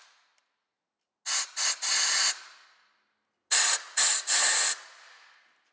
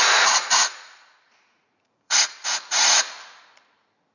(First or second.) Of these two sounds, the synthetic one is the second